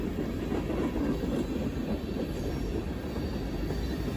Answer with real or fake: real